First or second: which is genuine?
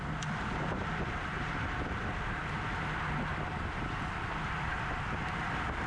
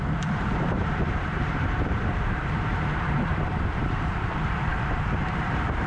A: first